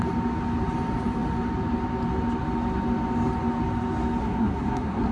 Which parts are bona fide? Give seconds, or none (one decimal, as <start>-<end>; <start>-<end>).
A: 0.0-4.2